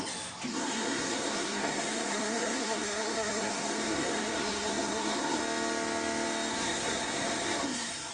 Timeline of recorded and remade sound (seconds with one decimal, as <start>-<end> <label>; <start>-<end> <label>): 0.0-0.5 recorded; 0.5-5.4 remade; 5.4-6.5 recorded; 6.5-8.1 remade